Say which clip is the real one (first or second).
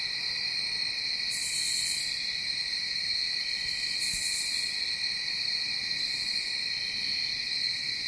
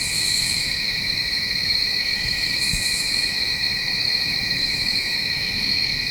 first